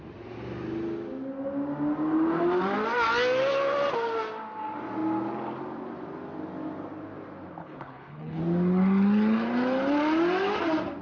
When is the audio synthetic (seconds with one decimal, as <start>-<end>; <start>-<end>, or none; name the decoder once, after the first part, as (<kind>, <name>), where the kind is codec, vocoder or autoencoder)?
7.6-8.4 (codec, HILCodec)